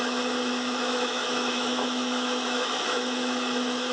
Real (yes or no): no